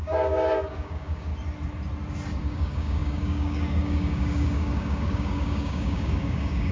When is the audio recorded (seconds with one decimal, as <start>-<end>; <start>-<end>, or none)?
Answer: 1.3-2.4